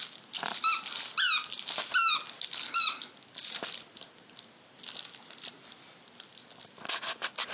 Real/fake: real